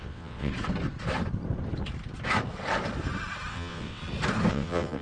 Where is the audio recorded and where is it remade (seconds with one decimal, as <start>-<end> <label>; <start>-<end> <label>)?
0.0-0.5 remade; 0.5-3.5 recorded; 3.5-4.0 remade; 4.0-4.5 recorded; 4.5-5.0 remade